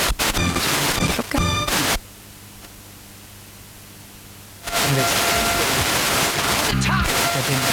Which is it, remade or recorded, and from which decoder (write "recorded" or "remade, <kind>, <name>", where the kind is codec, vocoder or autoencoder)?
recorded